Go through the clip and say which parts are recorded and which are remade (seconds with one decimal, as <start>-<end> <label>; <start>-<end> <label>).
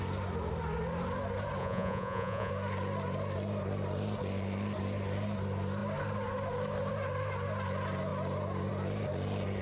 0.0-1.6 recorded; 1.6-2.5 remade; 2.5-9.6 recorded